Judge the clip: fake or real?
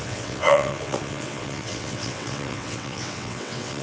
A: fake